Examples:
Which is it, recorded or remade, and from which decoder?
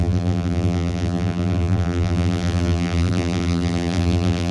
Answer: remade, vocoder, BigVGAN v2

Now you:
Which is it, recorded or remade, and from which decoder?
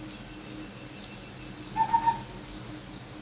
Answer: recorded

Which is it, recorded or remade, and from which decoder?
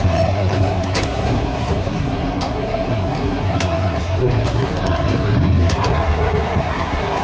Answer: remade, codec, SNAC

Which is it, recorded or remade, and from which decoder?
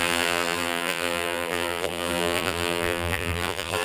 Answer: remade, vocoder, BigVGAN v2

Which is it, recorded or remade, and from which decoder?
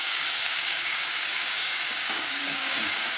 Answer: remade, codec, DAC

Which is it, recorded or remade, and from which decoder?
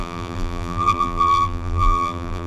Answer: remade, vocoder, BigVGAN v2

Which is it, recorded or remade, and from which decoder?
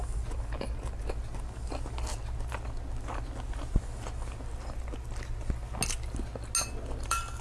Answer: recorded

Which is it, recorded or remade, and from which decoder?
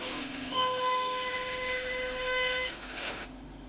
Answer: remade, autoencoder, DAC-VAE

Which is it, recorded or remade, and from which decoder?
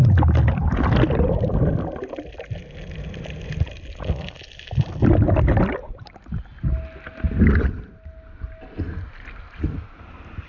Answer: recorded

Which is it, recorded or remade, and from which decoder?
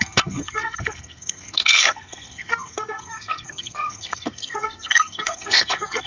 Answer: remade, codec, SNAC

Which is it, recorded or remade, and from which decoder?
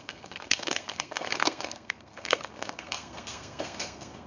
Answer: remade, codec, SNAC